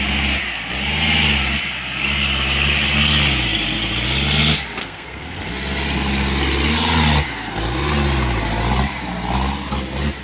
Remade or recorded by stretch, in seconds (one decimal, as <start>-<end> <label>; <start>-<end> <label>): 0.0-4.8 recorded; 4.8-5.5 remade; 5.5-10.2 recorded